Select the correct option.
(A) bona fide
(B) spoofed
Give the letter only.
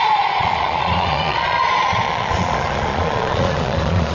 B